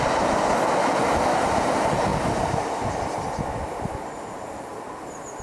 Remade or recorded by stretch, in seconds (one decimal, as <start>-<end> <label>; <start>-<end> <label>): 0.0-5.4 recorded